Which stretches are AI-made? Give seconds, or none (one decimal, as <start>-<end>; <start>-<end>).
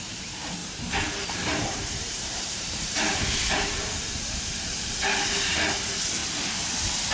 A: 0.6-4.1